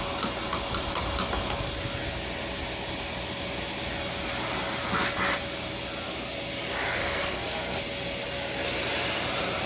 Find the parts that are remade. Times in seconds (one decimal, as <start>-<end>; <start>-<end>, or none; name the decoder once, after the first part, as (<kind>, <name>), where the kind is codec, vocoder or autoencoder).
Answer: 7.0-7.8 (codec, SNAC)